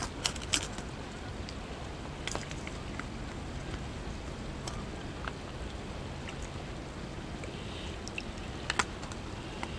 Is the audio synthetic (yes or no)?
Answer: no